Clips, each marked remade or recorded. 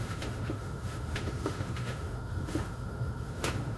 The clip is remade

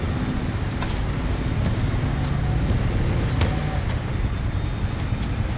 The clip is recorded